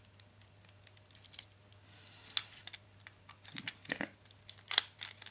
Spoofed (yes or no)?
no